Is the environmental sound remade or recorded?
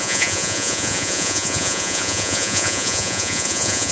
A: remade